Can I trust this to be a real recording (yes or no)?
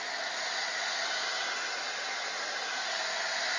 yes